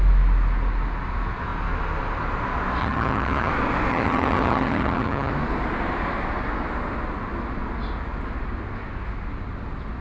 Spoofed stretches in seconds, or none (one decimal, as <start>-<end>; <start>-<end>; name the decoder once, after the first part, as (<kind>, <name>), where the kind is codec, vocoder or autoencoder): 2.8-3.5 (vocoder, HiFi-GAN); 3.9-5.3